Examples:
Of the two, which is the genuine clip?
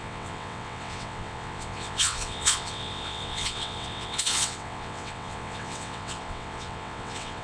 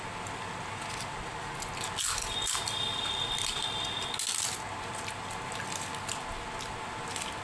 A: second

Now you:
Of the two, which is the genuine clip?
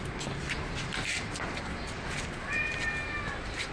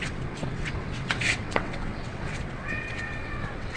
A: first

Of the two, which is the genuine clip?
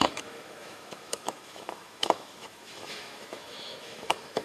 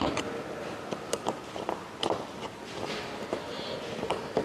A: second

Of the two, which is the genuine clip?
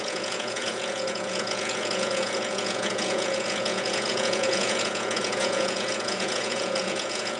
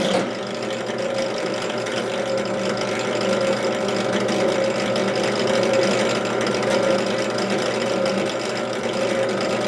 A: second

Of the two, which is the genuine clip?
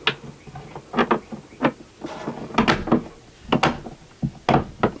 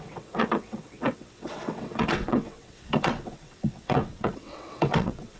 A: first